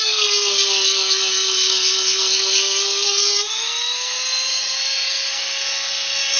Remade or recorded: remade